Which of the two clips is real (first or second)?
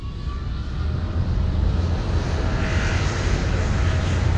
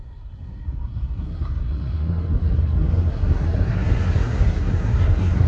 first